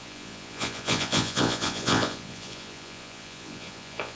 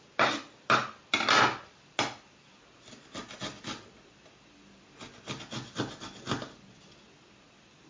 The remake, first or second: first